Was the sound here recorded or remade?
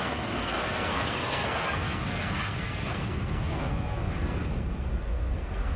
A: remade